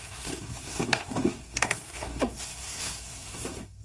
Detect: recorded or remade remade